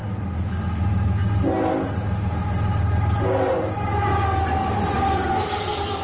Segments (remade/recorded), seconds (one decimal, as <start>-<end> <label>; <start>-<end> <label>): 0.0-6.0 recorded